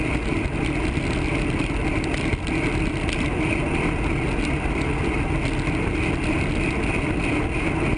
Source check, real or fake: real